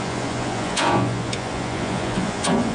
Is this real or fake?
fake